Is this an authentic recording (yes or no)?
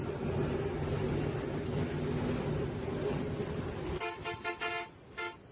yes